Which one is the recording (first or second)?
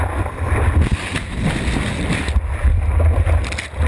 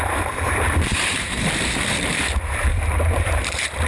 first